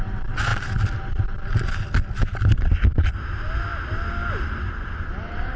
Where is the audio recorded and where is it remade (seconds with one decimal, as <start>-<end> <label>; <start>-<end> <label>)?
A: 0.0-5.6 recorded